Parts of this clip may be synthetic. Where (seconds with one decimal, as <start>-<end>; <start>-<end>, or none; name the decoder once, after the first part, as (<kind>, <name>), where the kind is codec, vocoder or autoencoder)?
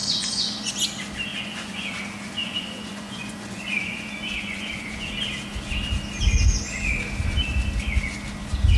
0.0-0.7 (vocoder, Vocos); 1.3-2.0; 2.4-5.1